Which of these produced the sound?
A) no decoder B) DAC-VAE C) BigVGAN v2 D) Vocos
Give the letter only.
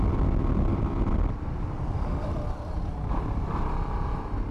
A